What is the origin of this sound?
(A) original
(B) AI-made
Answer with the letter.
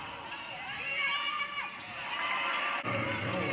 A